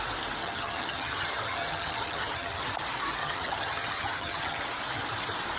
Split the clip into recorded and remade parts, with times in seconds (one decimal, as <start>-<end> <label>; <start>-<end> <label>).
0.0-0.4 recorded; 0.4-2.6 remade; 2.6-3.2 recorded; 3.2-4.6 remade; 4.6-5.6 recorded